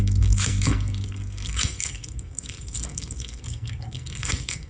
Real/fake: fake